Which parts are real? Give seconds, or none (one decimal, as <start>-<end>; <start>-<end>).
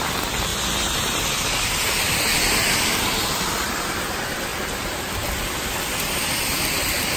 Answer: 0.5-1.2